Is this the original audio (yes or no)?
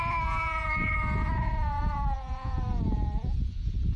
no